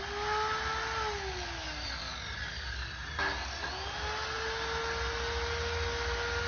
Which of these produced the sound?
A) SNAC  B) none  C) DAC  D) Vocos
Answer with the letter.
B